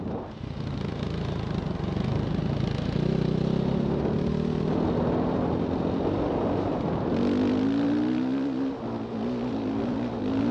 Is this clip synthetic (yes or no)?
no